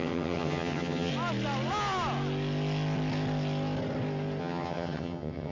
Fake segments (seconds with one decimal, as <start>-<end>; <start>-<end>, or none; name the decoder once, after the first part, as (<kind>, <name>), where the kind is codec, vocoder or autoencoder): 0.0-1.1 (vocoder, HiFi-GAN); 4.4-5.5